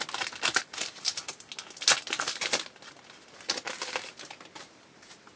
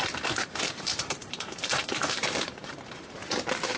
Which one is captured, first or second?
first